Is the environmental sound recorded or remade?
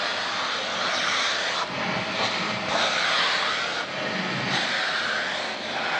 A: recorded